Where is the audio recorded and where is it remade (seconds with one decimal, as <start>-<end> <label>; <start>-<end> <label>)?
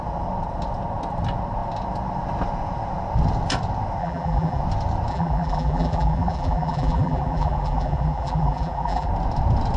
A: 0.0-4.0 recorded; 4.0-4.6 remade; 4.6-5.1 recorded; 5.1-9.1 remade; 9.1-9.8 recorded